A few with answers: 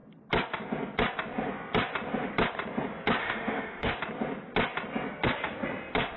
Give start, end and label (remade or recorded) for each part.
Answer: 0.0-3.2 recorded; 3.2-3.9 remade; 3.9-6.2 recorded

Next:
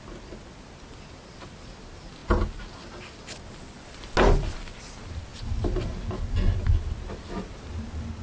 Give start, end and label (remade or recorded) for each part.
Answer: 0.0-8.2 recorded